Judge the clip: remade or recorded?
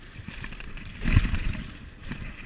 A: recorded